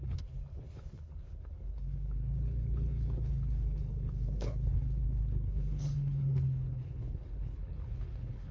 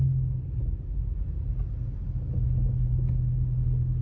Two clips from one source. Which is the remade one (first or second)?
first